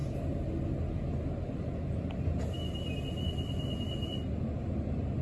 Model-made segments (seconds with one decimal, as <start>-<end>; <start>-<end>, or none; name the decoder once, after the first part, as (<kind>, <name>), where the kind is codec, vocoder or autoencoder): none

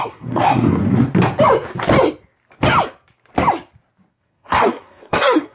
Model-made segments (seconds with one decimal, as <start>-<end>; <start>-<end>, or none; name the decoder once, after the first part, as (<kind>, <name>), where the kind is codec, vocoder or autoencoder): 0.0-0.8 (codec, SNAC); 4.1-5.5

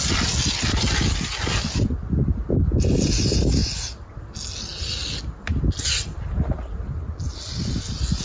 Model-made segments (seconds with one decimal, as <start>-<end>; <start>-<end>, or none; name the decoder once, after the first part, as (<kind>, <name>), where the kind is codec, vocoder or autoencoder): none

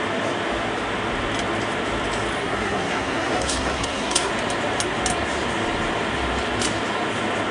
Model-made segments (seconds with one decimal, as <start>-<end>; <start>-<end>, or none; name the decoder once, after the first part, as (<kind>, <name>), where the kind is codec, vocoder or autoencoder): 2.4-4.3 (codec, SNAC)